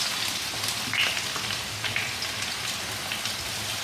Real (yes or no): yes